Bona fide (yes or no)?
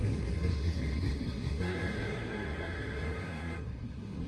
no